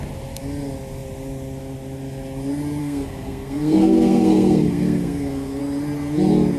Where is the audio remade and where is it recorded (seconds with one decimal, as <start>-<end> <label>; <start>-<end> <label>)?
0.0-2.8 recorded; 2.8-5.6 remade; 5.6-6.6 recorded